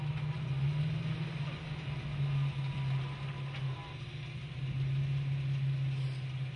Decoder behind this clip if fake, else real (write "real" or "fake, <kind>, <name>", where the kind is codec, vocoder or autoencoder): real